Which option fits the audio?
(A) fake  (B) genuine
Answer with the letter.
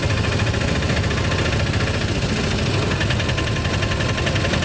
B